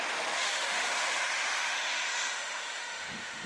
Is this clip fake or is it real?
fake